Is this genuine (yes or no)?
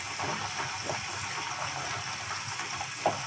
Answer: yes